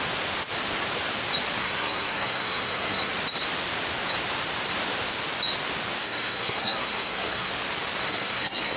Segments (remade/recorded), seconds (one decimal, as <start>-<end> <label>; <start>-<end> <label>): 0.0-1.6 recorded; 1.6-3.1 remade; 3.1-6.0 recorded; 6.0-7.5 remade; 7.5-8.0 recorded; 8.0-8.8 remade